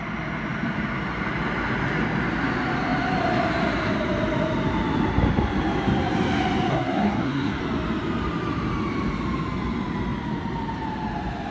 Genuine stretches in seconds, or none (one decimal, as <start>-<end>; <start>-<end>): 0.0-6.7; 7.6-11.5